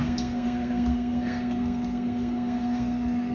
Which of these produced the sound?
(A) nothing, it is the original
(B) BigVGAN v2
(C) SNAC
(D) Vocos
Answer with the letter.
C